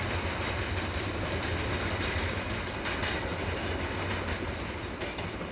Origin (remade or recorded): recorded